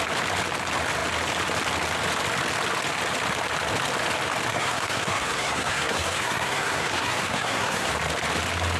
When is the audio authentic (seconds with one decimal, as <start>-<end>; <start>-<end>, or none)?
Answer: 0.0-4.5; 7.9-8.8